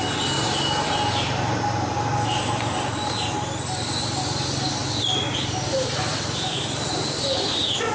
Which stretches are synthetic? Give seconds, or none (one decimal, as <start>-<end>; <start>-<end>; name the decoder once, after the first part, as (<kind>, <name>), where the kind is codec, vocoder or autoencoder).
none